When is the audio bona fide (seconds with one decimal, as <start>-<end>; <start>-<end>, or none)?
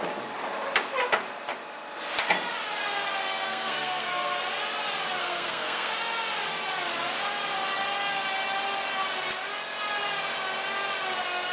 0.0-3.5; 4.4-5.2; 5.9-11.5